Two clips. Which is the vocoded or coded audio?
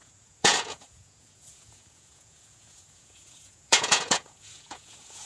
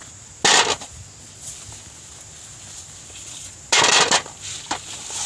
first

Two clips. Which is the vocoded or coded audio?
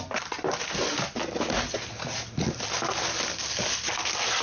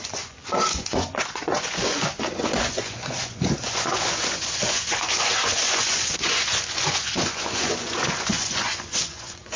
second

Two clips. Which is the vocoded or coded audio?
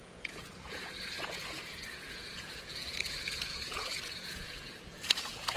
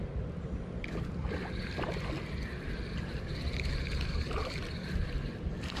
first